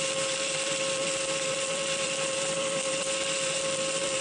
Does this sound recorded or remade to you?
remade